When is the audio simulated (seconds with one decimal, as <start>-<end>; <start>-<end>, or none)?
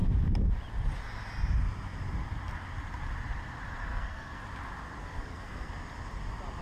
3.8-4.4; 5.0-5.7